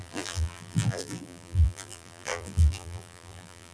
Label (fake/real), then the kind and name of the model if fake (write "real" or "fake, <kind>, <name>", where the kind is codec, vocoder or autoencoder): fake, vocoder, BigVGAN v2